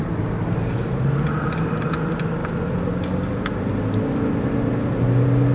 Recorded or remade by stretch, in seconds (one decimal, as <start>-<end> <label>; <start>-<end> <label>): 0.0-5.5 recorded